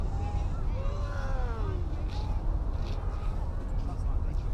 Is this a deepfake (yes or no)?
no